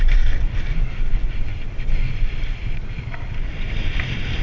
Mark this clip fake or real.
real